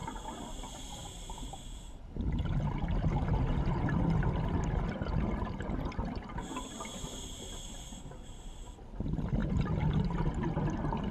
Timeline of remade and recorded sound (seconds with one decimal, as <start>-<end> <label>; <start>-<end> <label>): 0.0-11.1 recorded